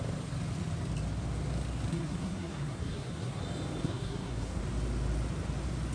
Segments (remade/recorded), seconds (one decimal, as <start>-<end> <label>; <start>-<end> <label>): 0.0-1.9 recorded; 1.9-3.4 remade; 3.4-3.8 recorded; 3.8-4.6 remade; 4.6-5.9 recorded